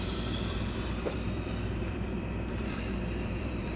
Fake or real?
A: fake